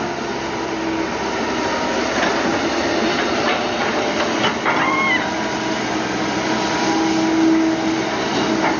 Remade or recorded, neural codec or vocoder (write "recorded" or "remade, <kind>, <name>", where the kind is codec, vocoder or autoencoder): recorded